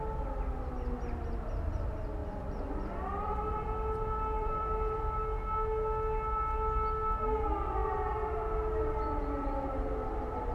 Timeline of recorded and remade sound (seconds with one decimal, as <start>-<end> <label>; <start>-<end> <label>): 0.0-2.2 recorded; 2.2-5.0 remade; 5.0-10.5 recorded